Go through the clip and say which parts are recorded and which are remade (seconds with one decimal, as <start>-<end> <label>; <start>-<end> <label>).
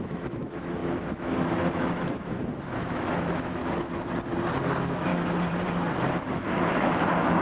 0.0-3.6 remade; 3.6-4.5 recorded; 4.5-5.1 remade; 5.1-6.2 recorded; 6.2-7.4 remade